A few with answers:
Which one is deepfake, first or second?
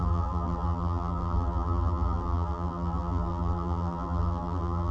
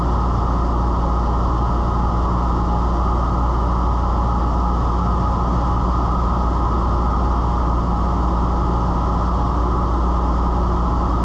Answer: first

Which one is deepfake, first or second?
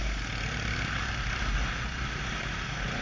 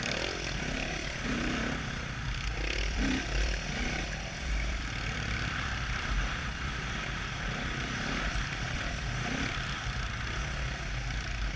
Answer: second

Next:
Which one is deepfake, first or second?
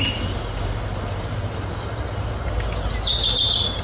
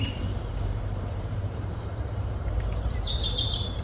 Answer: second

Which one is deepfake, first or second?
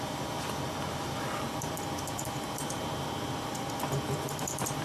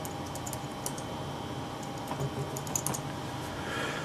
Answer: first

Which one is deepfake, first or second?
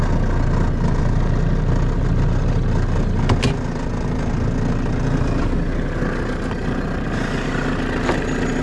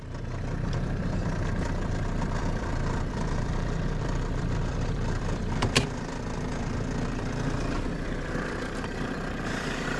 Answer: second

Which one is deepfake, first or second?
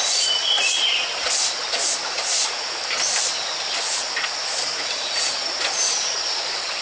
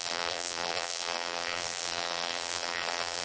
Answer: second